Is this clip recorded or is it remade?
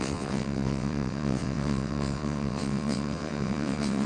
remade